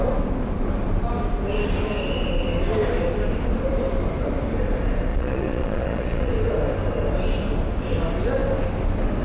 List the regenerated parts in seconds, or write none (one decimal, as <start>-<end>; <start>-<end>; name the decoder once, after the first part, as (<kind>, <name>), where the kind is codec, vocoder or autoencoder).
5.1-6.3 (vocoder, Vocos)